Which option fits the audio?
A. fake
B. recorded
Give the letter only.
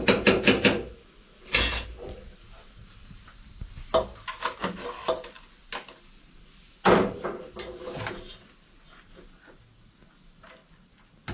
B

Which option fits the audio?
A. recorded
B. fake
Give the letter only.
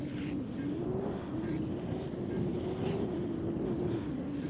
A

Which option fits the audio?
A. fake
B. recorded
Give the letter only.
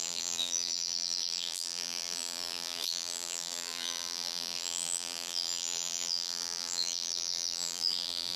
A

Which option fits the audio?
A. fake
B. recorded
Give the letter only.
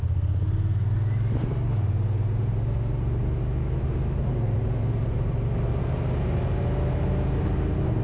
B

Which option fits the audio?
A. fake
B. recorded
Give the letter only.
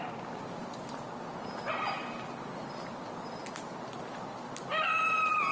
B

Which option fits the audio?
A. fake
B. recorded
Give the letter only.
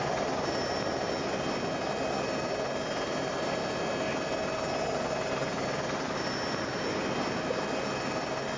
B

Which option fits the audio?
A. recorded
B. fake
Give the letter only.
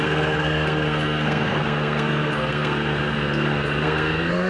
B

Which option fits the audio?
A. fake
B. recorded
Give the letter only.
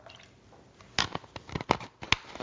B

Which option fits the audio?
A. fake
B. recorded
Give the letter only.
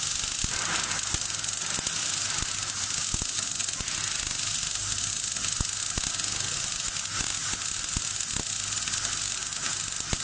B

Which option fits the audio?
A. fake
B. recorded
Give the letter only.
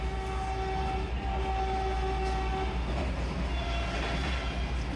B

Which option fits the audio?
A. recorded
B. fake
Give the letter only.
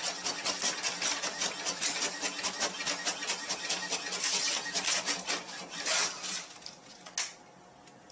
A